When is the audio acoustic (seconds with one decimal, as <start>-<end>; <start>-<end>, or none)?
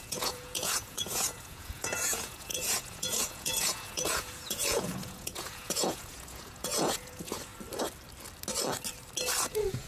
7.5-9.5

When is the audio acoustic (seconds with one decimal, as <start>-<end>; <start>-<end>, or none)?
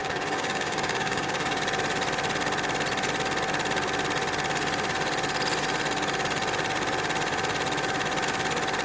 1.6-8.8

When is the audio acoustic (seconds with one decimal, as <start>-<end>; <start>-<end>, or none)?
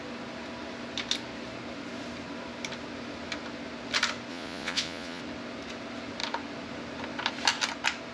0.0-4.3; 5.2-8.1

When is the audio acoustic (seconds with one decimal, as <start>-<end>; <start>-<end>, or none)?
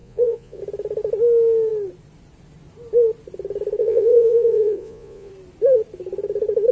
0.6-3.8; 5.3-6.7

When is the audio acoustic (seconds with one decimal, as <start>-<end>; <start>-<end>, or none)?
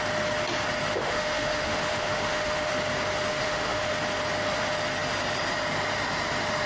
0.0-1.0; 2.7-3.3; 3.9-6.7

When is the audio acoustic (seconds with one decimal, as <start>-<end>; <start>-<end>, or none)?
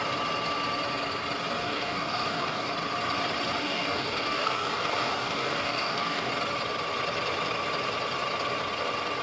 0.0-1.6; 2.7-3.6; 6.3-9.2